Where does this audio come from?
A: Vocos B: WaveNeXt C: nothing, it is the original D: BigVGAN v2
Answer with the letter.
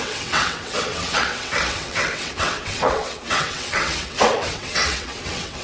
B